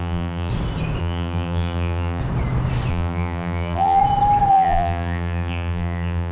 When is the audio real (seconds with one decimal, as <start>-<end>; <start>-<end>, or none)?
0.5-1.0; 2.2-2.9; 4.0-4.5